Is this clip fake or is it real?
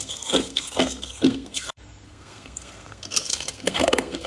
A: fake